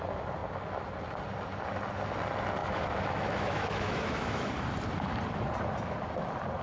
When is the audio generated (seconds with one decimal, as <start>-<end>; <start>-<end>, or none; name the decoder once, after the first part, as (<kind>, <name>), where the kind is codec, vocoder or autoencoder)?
2.6-4.5 (autoencoder, DAC-VAE)